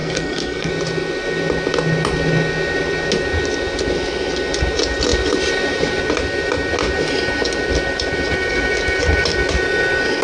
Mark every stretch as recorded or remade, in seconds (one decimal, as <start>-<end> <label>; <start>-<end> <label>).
0.0-0.7 remade; 0.7-10.2 recorded